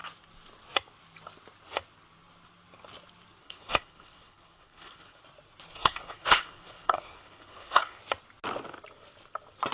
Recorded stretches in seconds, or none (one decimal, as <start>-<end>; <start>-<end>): 0.0-3.4; 5.2-5.7; 8.0-9.7